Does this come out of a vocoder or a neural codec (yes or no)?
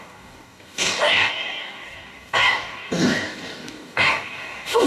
yes